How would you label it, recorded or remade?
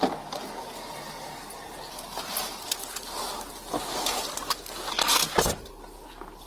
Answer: recorded